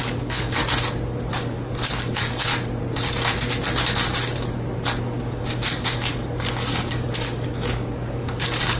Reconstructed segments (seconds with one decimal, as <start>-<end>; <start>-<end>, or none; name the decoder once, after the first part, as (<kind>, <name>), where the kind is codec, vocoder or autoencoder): 0.0-0.6 (codec, DAC); 1.3-2.5; 5.0-8.8